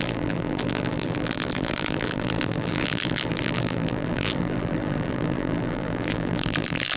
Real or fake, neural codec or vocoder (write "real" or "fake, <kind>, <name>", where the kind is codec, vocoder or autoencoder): fake, vocoder, BigVGAN v2